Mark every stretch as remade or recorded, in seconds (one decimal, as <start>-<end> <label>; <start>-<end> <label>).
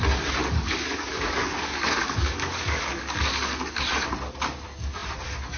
0.0-0.4 recorded; 0.4-3.8 remade; 3.8-5.6 recorded